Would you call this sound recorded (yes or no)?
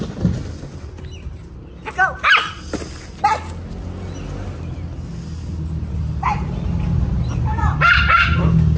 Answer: yes